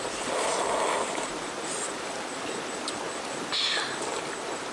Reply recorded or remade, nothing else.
recorded